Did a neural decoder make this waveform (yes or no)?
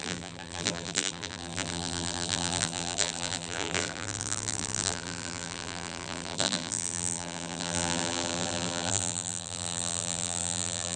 yes